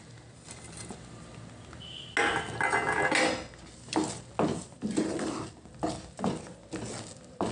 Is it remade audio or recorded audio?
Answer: recorded